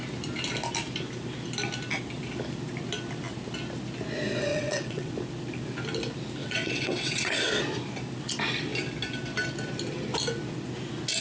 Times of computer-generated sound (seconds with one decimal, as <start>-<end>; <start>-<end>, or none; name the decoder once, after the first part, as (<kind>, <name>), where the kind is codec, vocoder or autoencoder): 4.5-5.1 (vocoder, WaveNeXt); 6.4-7.5